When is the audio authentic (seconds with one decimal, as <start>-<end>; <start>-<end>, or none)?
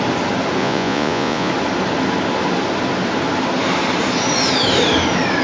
0.0-0.6; 1.5-5.4